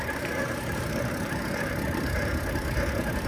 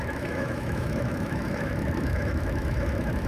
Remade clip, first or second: second